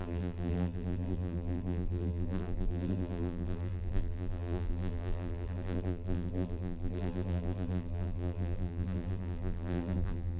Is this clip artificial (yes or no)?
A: yes